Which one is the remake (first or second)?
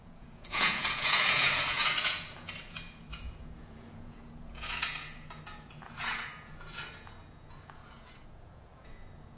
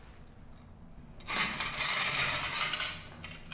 first